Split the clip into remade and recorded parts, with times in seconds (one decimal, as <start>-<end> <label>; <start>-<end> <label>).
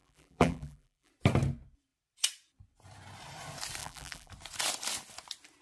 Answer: 0.0-1.1 remade; 1.1-3.8 recorded; 3.8-4.3 remade; 4.3-5.6 recorded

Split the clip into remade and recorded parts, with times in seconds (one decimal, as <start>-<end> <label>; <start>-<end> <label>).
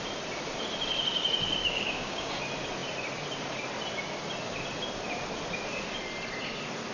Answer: 0.0-1.6 recorded; 1.6-2.3 remade; 2.3-6.9 recorded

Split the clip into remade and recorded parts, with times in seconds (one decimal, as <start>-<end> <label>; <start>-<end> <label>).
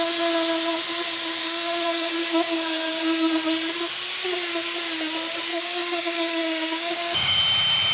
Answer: 0.0-1.4 recorded; 1.4-3.3 remade; 3.3-5.5 recorded; 5.5-7.4 remade; 7.4-7.9 recorded